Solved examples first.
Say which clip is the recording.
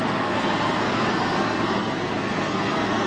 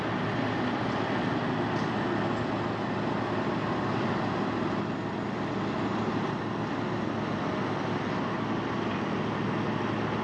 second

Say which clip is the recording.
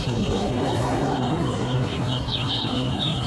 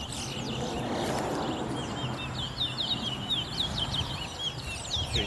second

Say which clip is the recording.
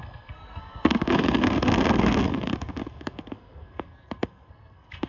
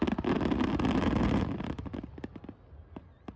second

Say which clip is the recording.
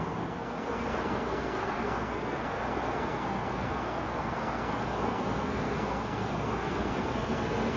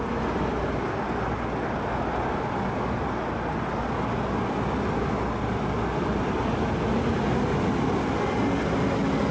second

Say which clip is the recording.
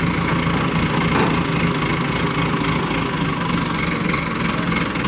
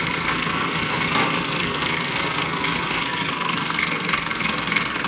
first